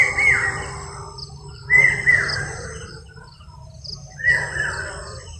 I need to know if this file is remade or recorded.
remade